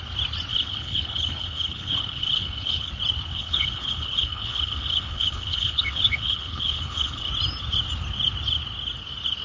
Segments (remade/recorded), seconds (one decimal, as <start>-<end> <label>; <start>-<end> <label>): 0.0-0.5 recorded; 0.5-2.9 remade; 2.9-3.3 recorded; 3.3-7.3 remade; 7.3-9.4 recorded